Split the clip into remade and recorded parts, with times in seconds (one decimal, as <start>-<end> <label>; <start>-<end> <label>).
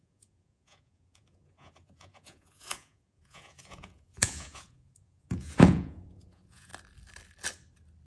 0.0-6.7 remade; 6.7-8.1 recorded